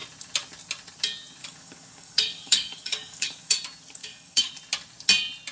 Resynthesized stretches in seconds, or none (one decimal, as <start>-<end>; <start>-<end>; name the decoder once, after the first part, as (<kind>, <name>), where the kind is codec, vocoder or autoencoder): 1.4-3.5 (codec, DAC); 4.0-4.5